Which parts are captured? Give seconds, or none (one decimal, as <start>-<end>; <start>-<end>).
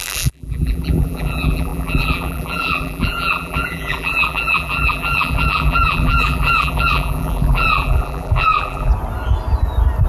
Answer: 8.9-10.1